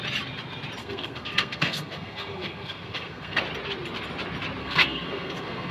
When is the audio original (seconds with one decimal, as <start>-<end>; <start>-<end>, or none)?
0.0-0.8; 3.4-4.6